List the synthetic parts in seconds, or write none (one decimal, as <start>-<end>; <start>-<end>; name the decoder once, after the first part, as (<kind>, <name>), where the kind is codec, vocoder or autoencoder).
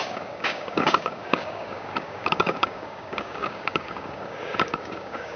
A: 0.0-5.4 (codec, DAC)